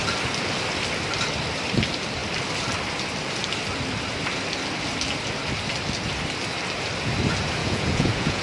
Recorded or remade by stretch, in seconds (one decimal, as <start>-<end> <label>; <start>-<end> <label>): 0.0-7.6 recorded; 7.6-8.4 remade